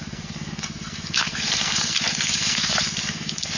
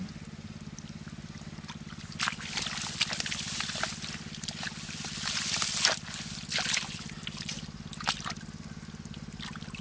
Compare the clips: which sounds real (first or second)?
second